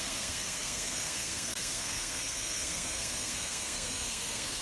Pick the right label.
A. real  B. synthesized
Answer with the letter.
B